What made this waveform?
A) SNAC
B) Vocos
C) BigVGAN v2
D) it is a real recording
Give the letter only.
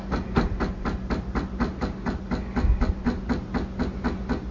D